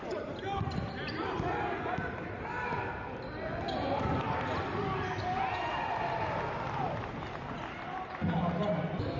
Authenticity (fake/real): real